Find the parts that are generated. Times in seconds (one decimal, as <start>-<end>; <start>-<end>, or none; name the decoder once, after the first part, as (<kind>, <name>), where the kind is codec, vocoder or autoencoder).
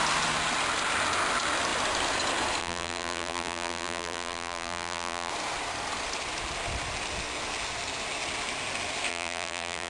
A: 2.6-5.3 (vocoder, BigVGAN v2); 9.1-9.9